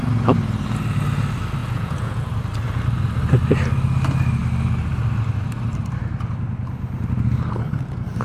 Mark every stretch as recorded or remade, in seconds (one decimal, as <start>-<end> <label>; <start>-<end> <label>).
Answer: 0.0-1.6 recorded; 1.6-2.3 remade; 2.3-8.2 recorded